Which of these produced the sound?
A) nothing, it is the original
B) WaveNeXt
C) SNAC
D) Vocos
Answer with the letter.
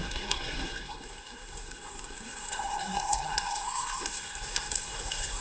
C